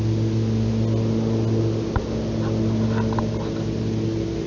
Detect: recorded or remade recorded